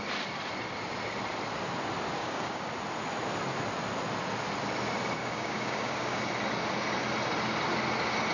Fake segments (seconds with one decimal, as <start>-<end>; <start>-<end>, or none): 2.2-2.7; 5.2-6.2